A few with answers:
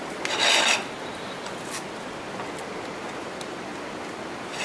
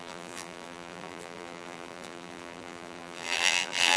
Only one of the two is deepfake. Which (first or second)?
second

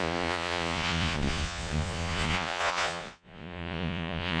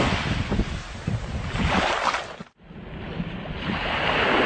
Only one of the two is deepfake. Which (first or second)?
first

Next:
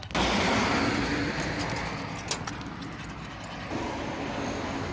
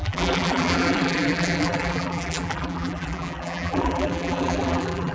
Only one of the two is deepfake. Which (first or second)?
second